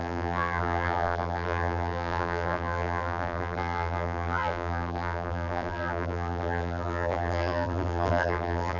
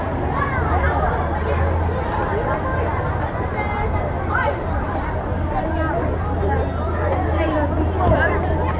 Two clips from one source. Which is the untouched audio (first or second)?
second